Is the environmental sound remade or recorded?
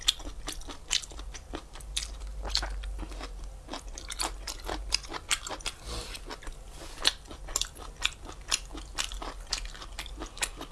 recorded